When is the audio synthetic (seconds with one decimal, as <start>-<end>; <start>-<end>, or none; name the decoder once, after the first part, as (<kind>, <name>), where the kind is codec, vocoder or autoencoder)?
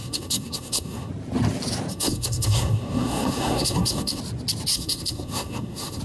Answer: 0.0-1.1 (codec, SNAC); 1.9-4.2; 4.7-6.0